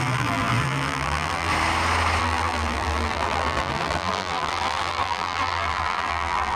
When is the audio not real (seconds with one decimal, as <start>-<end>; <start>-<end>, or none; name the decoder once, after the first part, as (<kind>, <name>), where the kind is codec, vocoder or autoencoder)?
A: 0.0-1.5 (vocoder, BigVGAN v2); 2.2-6.6